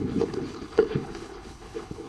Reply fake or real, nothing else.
fake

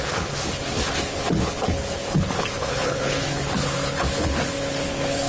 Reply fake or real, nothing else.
fake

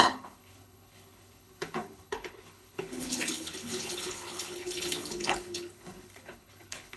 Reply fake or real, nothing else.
fake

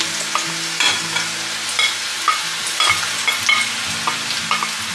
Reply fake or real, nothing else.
real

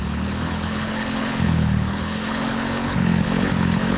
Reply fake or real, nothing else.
fake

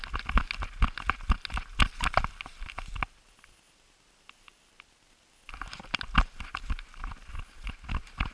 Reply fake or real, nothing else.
real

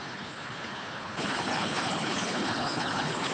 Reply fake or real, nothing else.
fake